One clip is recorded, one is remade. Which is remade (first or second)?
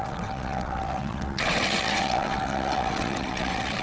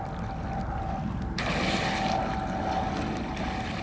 first